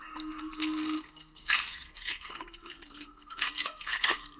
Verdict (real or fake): fake